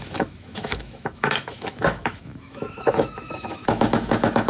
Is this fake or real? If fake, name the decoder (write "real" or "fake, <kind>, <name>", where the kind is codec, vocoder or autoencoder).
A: fake, autoencoder, DAC-VAE